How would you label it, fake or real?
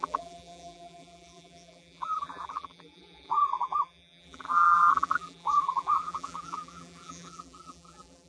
fake